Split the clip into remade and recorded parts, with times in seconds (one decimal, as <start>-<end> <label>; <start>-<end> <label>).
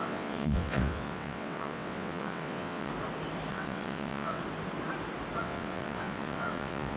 0.0-2.9 remade; 2.9-3.5 recorded; 3.5-4.4 remade; 4.4-5.4 recorded; 5.4-7.0 remade